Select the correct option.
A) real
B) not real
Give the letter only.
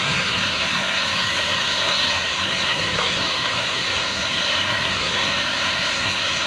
B